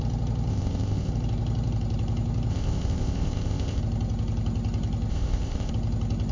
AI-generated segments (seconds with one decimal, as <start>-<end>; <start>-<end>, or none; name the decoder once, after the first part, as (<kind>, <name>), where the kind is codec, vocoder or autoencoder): 0.5-1.1 (codec, ZipCodec); 2.5-3.8; 5.1-5.7